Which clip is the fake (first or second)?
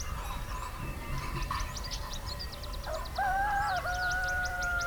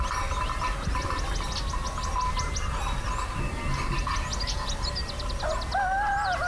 first